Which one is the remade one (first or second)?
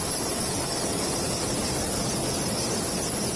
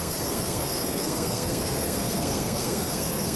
second